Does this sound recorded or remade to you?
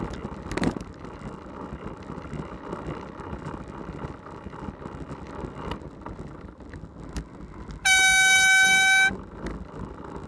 recorded